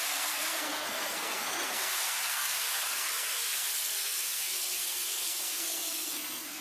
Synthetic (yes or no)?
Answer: yes